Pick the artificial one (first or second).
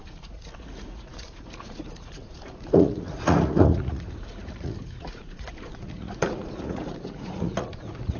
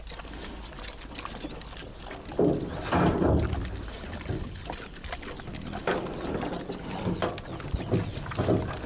first